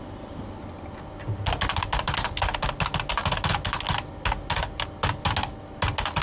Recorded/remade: recorded